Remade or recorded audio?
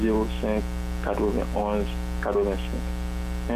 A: recorded